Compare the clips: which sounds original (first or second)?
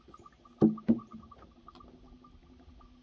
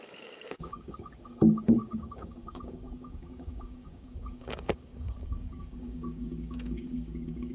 first